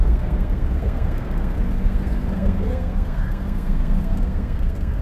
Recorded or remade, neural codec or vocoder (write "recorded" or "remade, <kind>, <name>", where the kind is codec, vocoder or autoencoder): remade, codec, SNAC